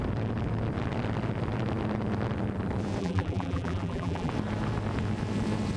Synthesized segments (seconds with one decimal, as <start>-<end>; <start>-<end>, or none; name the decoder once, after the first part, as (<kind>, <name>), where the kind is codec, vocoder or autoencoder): 3.0-4.3 (vocoder, BigVGAN v2)